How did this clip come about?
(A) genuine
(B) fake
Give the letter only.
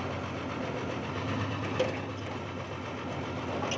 A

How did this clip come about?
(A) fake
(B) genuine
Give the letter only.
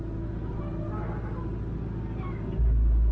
B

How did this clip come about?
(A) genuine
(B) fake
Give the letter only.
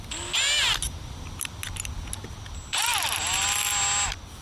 A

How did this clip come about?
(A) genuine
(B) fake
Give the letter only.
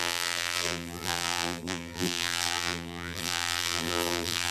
B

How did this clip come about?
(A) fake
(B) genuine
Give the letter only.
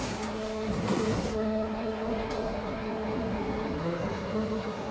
A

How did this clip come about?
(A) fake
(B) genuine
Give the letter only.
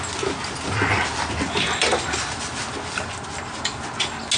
B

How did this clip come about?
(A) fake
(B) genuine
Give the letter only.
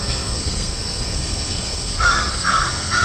A